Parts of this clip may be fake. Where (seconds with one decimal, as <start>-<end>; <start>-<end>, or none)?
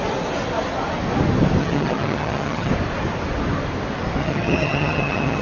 1.6-2.7; 4.2-5.4